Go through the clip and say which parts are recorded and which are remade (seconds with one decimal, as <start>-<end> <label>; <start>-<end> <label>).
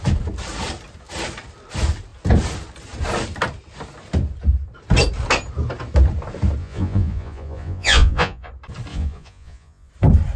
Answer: 0.0-6.6 recorded; 6.6-8.5 remade; 8.5-8.9 recorded; 8.9-9.9 remade; 9.9-10.4 recorded